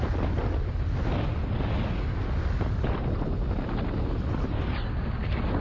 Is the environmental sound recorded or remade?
recorded